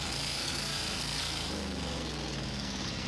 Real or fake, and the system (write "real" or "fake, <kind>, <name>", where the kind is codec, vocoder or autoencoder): fake, codec, SNAC